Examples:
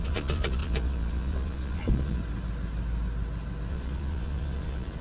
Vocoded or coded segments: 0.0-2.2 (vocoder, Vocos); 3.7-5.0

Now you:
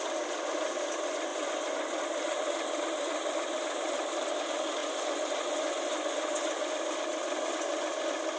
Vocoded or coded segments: 1.3-2.0 (vocoder, Vocos); 4.8-6.7

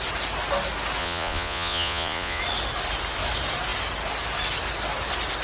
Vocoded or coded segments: 1.0-2.4 (vocoder, Vocos)